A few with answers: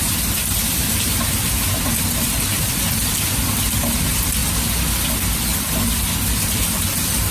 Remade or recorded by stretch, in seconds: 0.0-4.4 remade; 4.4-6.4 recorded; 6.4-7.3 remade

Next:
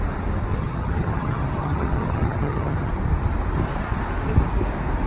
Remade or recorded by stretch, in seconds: 0.0-0.5 recorded; 0.5-2.9 remade; 2.9-5.1 recorded

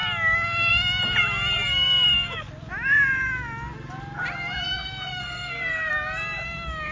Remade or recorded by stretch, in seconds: 0.0-5.1 recorded; 5.1-5.9 remade; 5.9-6.9 recorded

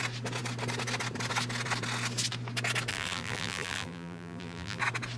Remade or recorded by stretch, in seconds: 0.0-2.9 recorded; 2.9-4.8 remade; 4.8-5.2 recorded

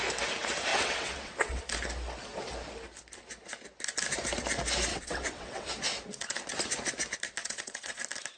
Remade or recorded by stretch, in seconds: 0.0-0.7 recorded; 0.7-1.6 remade; 1.6-4.9 recorded; 4.9-5.7 remade; 5.7-7.4 recorded; 7.4-8.0 remade; 8.0-8.4 recorded

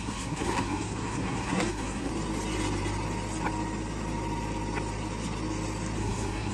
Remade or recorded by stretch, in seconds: 0.0-2.1 remade; 2.1-6.0 recorded; 6.0-6.5 remade

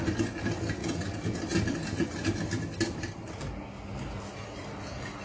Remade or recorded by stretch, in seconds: 0.0-0.8 recorded; 0.8-1.4 remade; 1.4-5.2 recorded

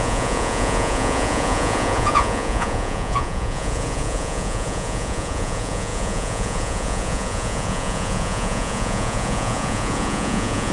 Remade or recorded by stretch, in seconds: 0.0-10.7 remade